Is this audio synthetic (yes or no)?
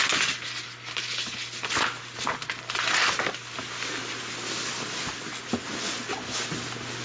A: no